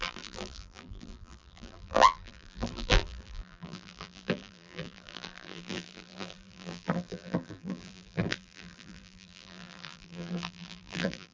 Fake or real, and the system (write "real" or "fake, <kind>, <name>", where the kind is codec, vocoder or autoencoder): fake, vocoder, BigVGAN v2